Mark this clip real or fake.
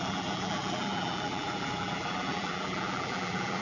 fake